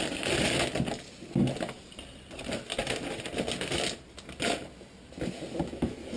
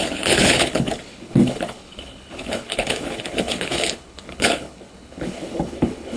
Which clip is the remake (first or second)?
second